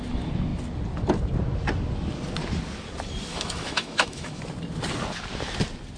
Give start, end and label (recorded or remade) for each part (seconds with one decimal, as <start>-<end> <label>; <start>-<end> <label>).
0.0-3.3 recorded; 3.3-4.4 remade; 4.4-6.0 recorded